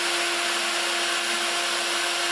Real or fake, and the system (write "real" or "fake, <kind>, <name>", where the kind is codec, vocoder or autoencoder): real